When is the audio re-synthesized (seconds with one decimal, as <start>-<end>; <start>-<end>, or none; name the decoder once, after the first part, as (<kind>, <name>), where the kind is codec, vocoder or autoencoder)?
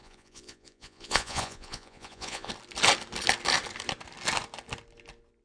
0.0-2.5 (vocoder, Vocos)